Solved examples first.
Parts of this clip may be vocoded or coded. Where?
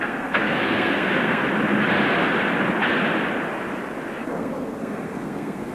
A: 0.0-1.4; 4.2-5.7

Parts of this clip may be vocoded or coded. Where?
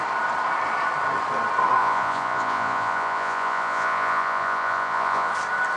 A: 1.8-5.3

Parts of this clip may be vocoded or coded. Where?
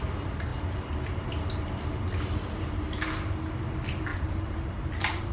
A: 4.1-5.3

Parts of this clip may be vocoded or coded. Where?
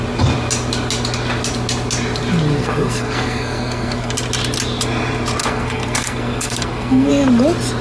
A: 2.6-4.1; 5.4-7.1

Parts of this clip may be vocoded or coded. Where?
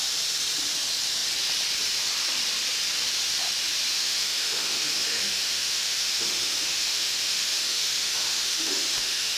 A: 3.9-9.4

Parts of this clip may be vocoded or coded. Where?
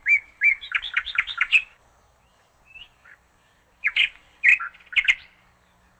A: 0.0-4.5; 5.4-6.0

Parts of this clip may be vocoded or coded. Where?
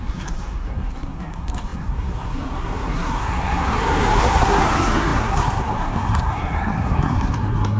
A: 0.0-7.8